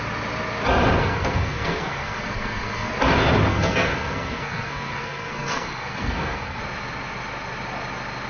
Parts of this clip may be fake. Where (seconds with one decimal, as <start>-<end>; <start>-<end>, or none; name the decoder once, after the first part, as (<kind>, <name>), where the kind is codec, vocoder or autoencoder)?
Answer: 1.0-2.9 (codec, SNAC); 3.5-6.6